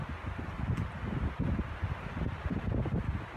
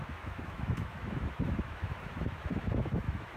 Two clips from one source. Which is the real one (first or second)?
first